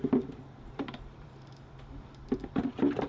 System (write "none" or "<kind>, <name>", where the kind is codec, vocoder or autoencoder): vocoder, BigVGAN v2